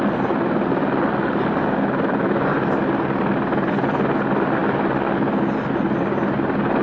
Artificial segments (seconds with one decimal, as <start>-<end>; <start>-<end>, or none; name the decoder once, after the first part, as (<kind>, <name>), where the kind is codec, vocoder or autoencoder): none